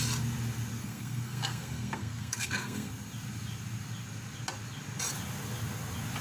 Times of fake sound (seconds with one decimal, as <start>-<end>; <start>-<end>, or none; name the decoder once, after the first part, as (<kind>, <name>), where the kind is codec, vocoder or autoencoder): 0.8-2.9 (codec, SNAC)